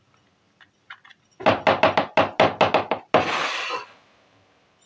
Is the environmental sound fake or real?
real